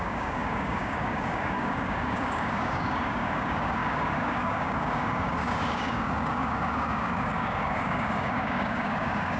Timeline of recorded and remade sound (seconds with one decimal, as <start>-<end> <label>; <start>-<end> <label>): 0.0-9.4 remade